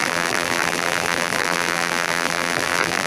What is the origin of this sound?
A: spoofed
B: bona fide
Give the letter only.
A